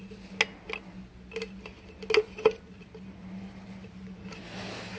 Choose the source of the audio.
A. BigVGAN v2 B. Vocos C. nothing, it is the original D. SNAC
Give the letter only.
C